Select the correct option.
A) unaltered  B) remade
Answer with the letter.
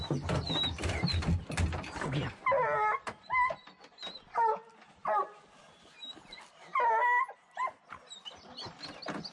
A